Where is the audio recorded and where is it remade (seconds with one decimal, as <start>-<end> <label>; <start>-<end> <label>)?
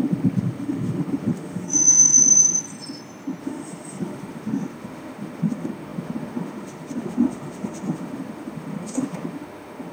0.0-2.2 remade; 2.2-3.4 recorded; 3.4-9.9 remade